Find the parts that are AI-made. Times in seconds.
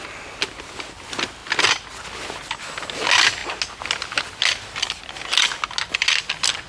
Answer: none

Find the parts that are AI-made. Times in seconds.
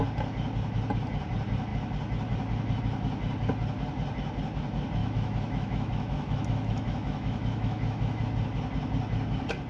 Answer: 5.0-8.2 (autoencoder, DAC-VAE)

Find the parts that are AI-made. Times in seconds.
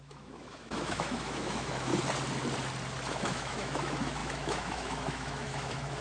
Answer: 0.0-1.9 (autoencoder, DAC-VAE); 3.1-6.0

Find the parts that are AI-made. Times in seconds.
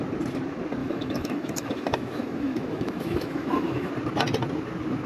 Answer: 0.8-3.9 (autoencoder, DAC-VAE)